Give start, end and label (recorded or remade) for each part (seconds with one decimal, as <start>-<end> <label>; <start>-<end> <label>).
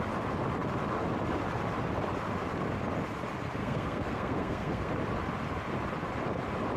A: 0.0-3.6 recorded; 3.6-4.9 remade; 4.9-6.8 recorded